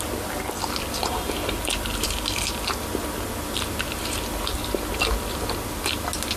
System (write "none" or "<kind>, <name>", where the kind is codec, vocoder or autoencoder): none